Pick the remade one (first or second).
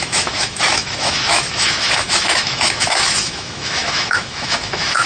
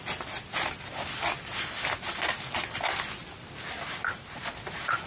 first